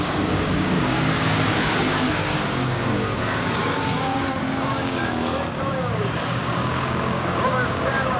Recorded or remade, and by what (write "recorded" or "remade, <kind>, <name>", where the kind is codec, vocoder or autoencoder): remade, codec, DAC